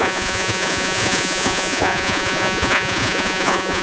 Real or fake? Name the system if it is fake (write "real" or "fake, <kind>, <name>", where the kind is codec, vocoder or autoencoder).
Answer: fake, vocoder, Vocos